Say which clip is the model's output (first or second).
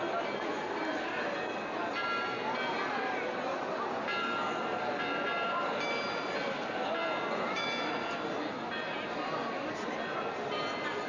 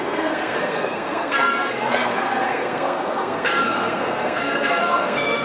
second